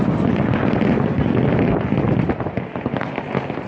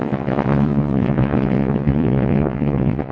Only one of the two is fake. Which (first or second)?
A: second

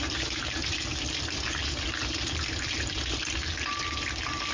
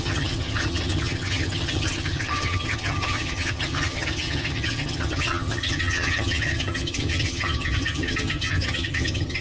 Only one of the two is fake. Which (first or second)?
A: second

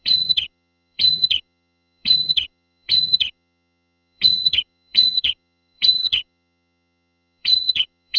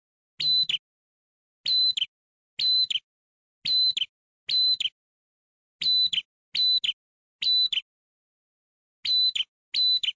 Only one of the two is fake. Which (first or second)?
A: first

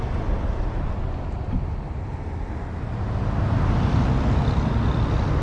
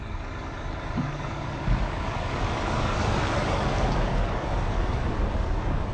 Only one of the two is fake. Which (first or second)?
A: second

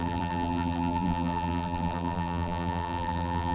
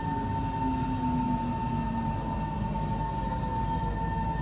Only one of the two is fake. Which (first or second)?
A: first